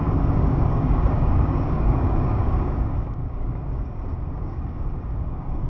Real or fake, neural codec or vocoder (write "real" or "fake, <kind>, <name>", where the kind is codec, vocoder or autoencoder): fake, codec, DAC